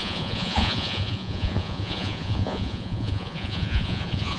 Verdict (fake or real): fake